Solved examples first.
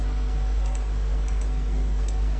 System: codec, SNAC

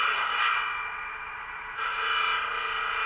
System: none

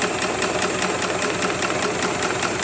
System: none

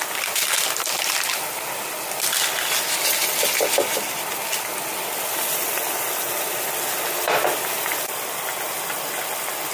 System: none